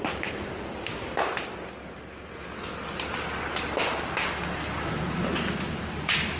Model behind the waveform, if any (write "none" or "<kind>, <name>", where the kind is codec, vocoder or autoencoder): none